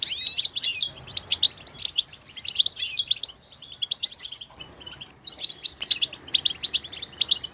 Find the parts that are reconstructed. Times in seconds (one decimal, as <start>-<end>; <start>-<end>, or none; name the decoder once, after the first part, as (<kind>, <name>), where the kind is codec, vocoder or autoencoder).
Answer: none